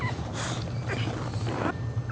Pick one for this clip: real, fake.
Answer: real